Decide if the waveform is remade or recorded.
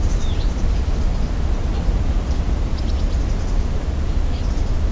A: recorded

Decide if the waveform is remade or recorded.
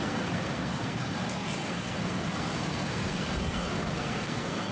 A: remade